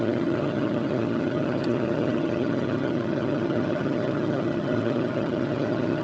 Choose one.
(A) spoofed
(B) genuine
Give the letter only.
A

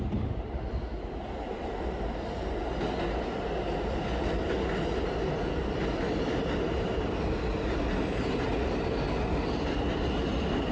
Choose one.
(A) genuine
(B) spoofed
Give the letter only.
A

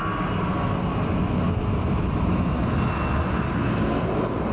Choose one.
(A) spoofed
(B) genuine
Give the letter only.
B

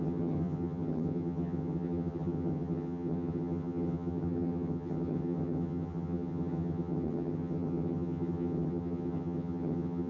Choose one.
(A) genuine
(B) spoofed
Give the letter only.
B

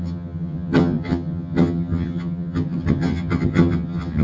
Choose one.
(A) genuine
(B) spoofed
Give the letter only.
B